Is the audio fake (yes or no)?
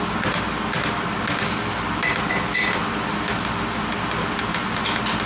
no